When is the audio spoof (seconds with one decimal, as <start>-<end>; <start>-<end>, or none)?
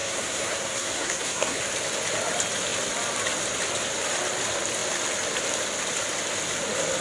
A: 0.0-1.6